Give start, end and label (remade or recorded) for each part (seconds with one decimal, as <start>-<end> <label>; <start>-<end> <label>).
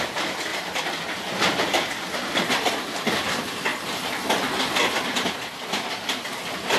0.0-3.7 remade; 3.7-5.3 recorded; 5.3-6.8 remade